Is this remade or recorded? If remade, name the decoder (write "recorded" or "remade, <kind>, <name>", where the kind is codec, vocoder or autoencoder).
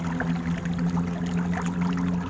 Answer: recorded